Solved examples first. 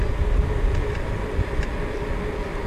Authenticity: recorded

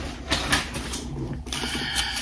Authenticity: recorded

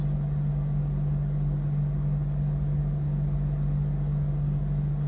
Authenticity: recorded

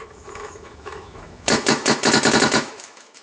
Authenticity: remade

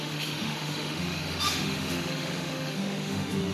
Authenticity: remade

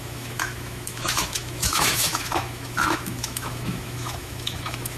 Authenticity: remade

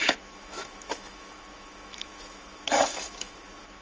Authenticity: remade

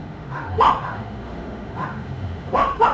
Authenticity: remade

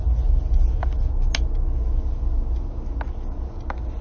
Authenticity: recorded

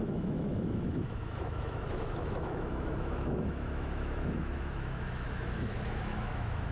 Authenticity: remade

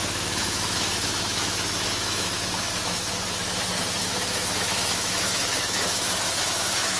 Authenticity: remade